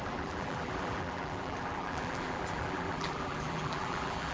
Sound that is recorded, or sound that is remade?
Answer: remade